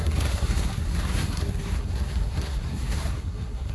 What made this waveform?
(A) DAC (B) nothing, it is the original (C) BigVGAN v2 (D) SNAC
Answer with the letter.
D